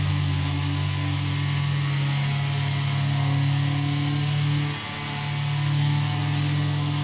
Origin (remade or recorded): recorded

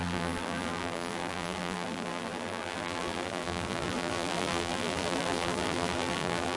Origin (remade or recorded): remade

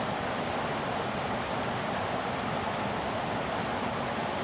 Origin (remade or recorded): recorded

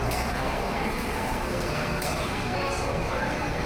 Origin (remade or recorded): remade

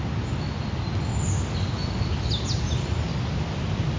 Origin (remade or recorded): recorded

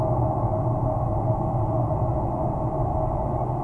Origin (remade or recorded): recorded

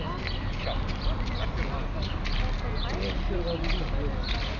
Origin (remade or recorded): recorded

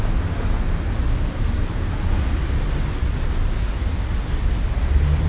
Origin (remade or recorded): recorded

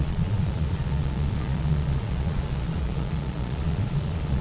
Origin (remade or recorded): remade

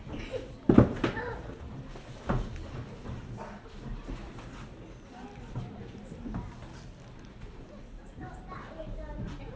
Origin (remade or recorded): recorded